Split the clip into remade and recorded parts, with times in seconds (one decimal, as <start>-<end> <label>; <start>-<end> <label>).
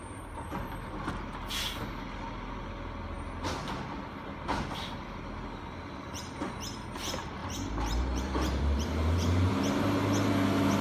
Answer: 0.0-7.4 recorded; 7.4-9.5 remade; 9.5-10.8 recorded